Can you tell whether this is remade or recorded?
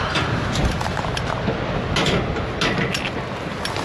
recorded